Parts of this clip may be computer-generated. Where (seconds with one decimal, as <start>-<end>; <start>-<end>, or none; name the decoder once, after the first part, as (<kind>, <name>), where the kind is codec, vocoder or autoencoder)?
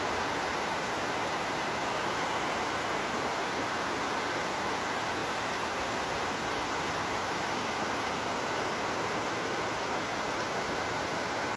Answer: none